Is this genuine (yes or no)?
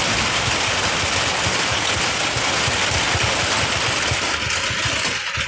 yes